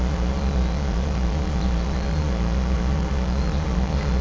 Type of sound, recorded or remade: remade